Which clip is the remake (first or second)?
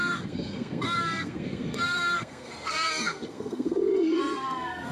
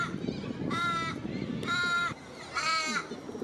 first